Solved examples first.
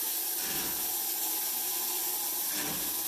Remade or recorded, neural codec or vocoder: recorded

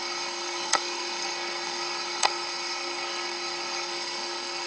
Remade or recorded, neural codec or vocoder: remade, codec, SNAC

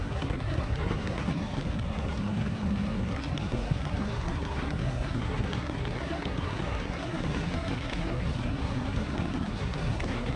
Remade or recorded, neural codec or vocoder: remade, codec, SNAC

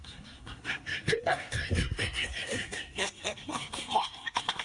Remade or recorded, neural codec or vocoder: remade, codec, SNAC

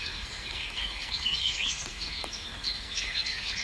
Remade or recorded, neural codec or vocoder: remade, codec, SNAC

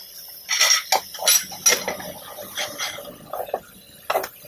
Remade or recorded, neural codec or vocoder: recorded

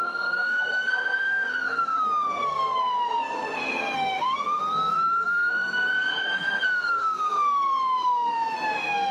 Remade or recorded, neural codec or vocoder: remade, codec, SNAC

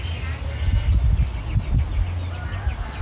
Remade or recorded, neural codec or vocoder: recorded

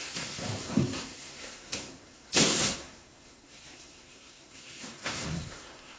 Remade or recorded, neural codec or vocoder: remade, codec, SNAC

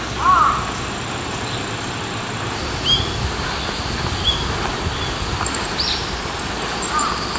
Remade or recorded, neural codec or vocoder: recorded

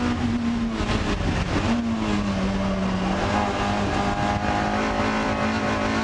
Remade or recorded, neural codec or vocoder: recorded